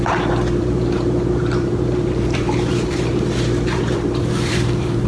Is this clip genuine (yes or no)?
no